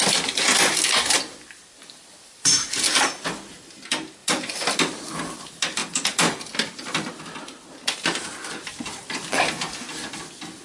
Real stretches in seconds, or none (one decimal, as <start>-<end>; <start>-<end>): 0.0-10.6